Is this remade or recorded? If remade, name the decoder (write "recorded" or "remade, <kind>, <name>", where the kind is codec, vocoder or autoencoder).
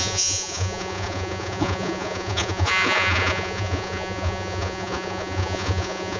remade, vocoder, Vocos